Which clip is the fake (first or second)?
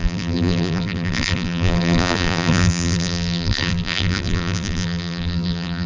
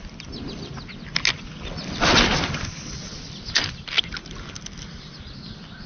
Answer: first